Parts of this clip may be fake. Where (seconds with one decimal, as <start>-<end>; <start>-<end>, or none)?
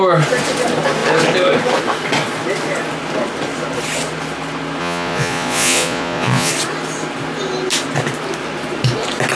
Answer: 4.8-6.5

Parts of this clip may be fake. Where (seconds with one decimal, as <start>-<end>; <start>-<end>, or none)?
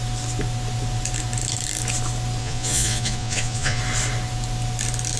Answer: 2.4-3.8